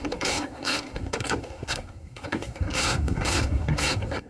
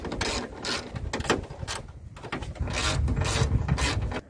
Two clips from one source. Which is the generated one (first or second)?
first